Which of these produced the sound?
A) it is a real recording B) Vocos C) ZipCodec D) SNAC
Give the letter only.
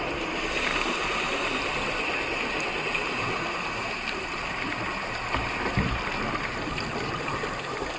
A